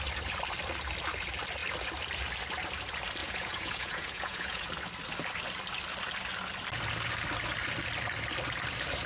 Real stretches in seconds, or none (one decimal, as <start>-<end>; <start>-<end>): 0.0-3.2; 4.6-9.1